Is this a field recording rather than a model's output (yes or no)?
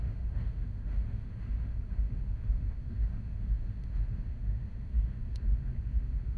no